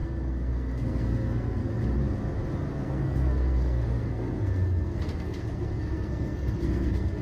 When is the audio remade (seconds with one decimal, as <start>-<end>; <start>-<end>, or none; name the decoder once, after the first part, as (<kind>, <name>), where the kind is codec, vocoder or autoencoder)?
0.0-1.7 (codec, SNAC); 2.7-7.2